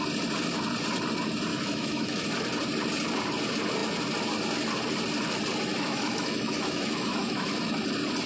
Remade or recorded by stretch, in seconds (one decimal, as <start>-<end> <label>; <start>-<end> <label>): 0.0-1.5 recorded; 1.5-2.4 remade; 2.4-5.7 recorded; 5.7-7.6 remade; 7.6-8.3 recorded